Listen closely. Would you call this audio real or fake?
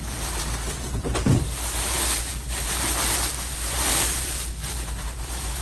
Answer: fake